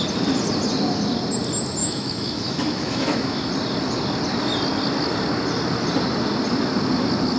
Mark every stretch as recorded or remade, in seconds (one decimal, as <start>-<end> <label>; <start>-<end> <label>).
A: 0.0-1.8 recorded; 1.8-3.5 remade; 3.5-7.4 recorded